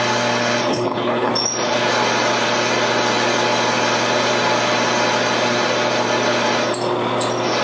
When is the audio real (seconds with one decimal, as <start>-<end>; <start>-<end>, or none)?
0.0-0.7; 1.3-7.6